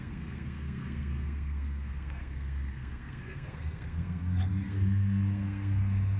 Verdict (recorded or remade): remade